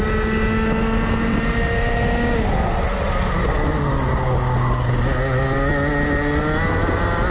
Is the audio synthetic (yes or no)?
no